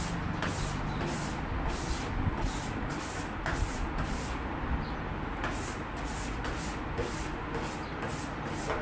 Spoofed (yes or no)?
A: no